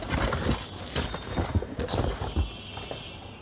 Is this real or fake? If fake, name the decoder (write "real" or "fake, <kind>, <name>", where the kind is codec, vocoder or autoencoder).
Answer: real